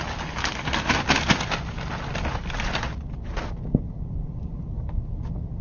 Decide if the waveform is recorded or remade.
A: recorded